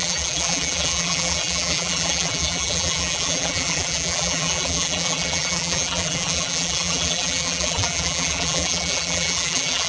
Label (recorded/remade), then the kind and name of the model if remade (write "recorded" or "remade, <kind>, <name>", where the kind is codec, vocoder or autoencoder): remade, vocoder, BigVGAN v2